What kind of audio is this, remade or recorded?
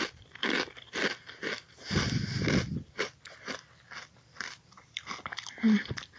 recorded